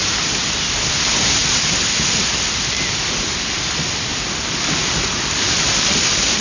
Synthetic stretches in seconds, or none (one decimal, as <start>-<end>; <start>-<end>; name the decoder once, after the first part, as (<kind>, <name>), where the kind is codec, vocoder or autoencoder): none